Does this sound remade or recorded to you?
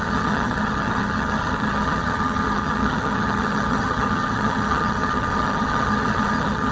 remade